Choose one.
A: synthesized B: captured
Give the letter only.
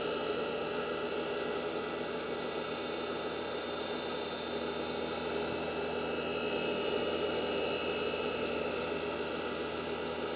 B